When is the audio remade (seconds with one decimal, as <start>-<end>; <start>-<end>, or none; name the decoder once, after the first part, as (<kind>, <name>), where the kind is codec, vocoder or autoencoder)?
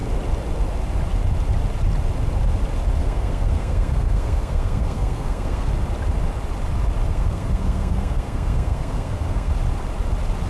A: 3.0-5.7 (codec, SNAC); 7.1-9.5